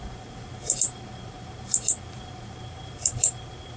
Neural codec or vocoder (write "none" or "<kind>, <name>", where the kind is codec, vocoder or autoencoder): vocoder, BigVGAN v2